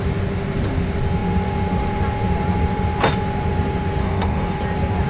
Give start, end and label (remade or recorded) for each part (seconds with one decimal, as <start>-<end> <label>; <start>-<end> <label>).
0.0-4.0 recorded; 4.0-4.6 remade; 4.6-5.1 recorded